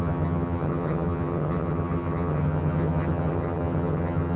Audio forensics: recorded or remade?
remade